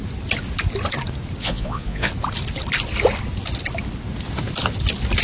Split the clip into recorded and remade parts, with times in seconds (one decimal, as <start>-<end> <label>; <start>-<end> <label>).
0.0-1.4 recorded; 1.4-2.1 remade; 2.1-5.2 recorded